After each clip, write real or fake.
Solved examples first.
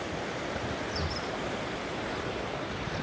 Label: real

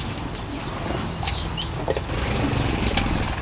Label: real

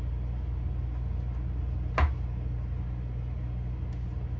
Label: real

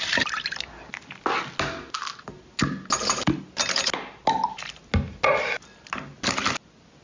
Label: real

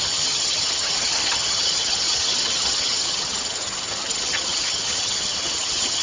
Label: fake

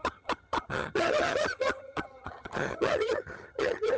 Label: fake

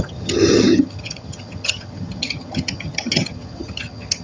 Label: fake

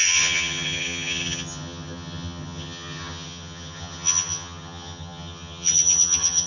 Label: fake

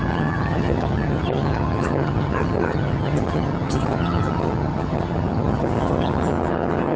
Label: fake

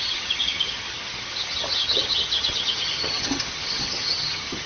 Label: fake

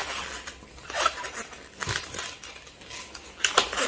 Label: real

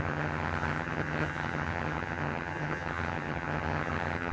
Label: fake